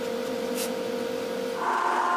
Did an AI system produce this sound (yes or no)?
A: no